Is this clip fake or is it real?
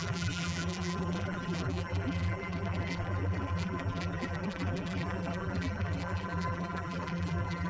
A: fake